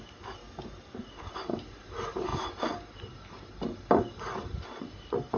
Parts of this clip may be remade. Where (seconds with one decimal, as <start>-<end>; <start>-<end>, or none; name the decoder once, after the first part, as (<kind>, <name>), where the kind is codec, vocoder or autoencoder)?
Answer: 0.0-0.4 (vocoder, BigVGAN v2); 1.0-5.4